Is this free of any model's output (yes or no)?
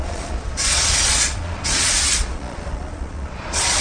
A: no